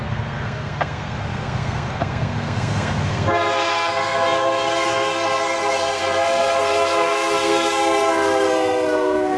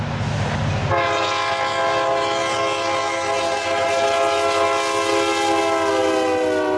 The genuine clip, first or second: second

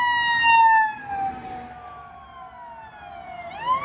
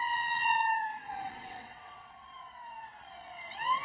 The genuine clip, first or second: first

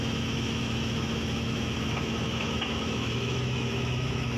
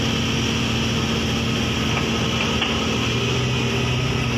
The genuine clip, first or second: second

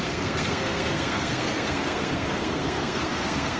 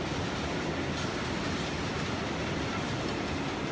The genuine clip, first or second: second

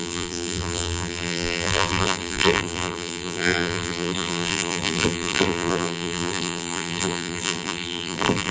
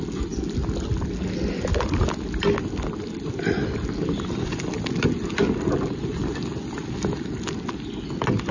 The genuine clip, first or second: second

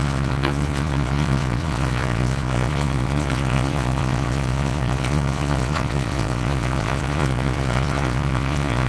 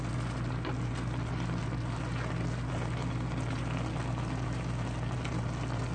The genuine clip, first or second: second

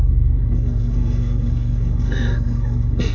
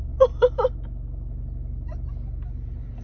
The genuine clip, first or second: second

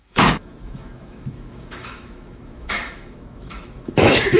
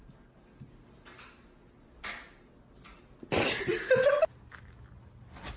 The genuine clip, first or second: second